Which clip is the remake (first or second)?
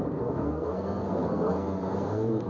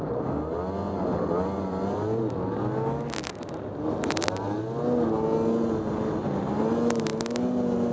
first